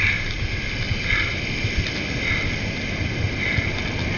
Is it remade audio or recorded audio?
recorded